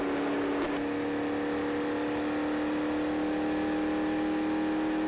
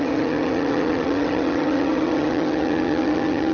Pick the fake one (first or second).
second